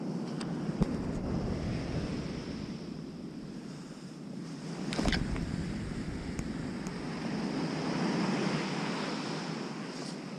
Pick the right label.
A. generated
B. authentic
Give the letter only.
B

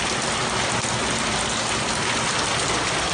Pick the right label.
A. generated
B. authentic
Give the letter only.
B